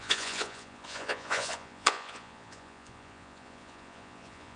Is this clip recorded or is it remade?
remade